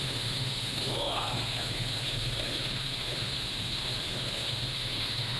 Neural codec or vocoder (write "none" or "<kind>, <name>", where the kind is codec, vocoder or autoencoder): autoencoder, DAC-VAE